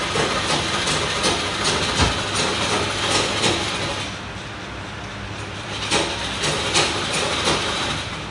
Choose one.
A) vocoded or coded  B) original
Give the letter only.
B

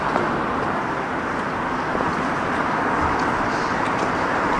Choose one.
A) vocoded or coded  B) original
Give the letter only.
B